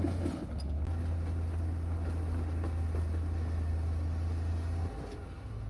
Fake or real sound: real